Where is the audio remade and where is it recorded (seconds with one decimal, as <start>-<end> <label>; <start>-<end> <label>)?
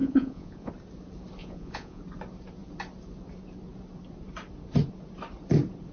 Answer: 0.0-0.7 remade; 0.7-1.4 recorded; 1.4-2.0 remade; 2.0-5.9 recorded